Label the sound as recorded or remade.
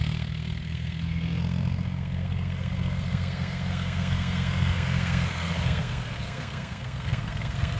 remade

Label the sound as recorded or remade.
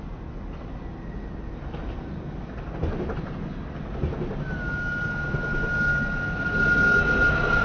recorded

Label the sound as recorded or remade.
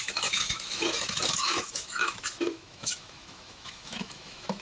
remade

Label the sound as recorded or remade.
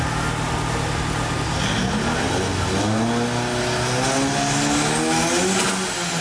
recorded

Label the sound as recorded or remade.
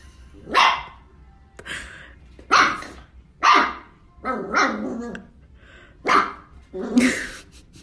recorded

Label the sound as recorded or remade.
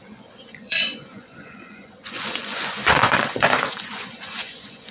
remade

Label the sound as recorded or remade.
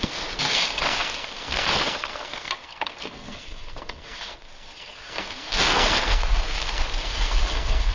remade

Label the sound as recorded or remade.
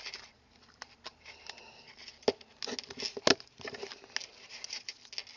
recorded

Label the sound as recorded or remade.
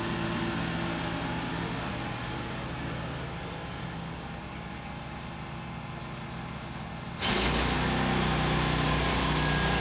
recorded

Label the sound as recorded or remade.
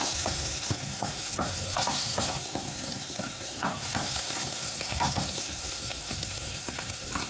remade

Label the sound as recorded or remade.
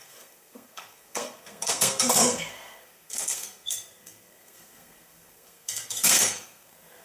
remade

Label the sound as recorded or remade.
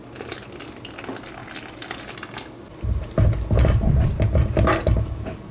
recorded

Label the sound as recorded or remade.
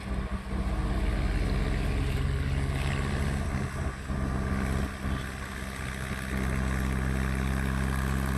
recorded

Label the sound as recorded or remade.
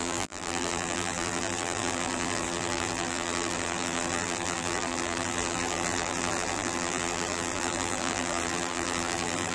remade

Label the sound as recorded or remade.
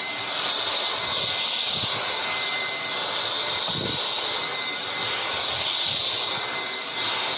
recorded